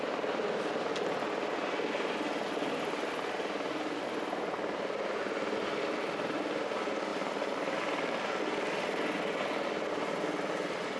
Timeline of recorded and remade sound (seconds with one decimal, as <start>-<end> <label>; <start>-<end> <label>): 0.0-7.1 recorded; 7.1-8.4 remade; 8.4-11.0 recorded